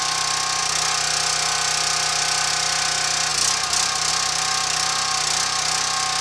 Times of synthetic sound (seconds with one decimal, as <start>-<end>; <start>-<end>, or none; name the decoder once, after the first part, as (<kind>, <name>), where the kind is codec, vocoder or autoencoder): none